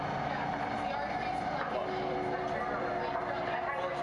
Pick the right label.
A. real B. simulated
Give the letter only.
A